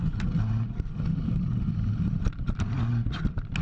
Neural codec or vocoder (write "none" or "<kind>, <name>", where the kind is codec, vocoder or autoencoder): none